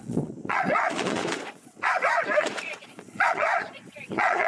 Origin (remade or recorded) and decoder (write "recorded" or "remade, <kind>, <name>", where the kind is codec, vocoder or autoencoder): remade, vocoder, Vocos